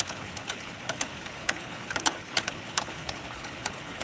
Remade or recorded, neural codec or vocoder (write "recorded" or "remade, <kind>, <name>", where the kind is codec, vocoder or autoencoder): remade, codec, HILCodec